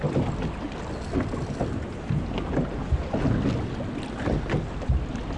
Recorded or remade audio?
recorded